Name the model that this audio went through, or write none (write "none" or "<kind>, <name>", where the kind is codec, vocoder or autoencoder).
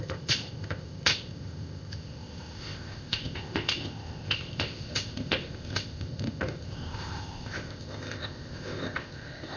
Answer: codec, ZipCodec